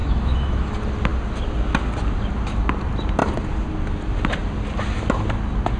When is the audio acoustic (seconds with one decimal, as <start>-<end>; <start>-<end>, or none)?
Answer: 0.7-5.8